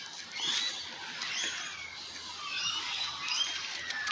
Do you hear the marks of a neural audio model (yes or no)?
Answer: no